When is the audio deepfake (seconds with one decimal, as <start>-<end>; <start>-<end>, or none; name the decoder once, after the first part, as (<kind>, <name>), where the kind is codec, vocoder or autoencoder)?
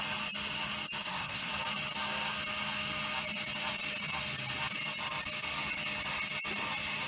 1.0-1.5 (codec, SNAC)